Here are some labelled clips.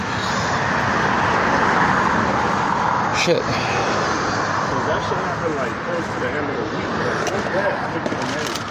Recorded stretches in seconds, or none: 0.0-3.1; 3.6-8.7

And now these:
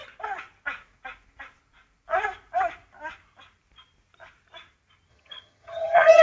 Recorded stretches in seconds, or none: 0.0-5.1

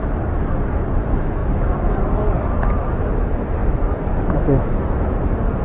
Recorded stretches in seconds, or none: 0.0-5.6

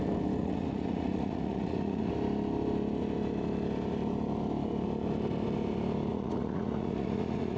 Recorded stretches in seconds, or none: 0.0-0.4; 2.1-6.1

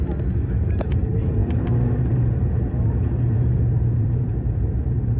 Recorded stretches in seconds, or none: 0.0-0.6

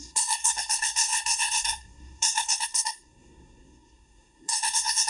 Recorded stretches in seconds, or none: none

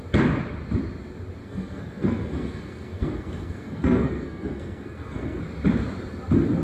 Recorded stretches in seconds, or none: 0.0-1.4; 5.4-6.6